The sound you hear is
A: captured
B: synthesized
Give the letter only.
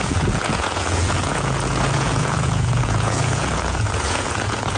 B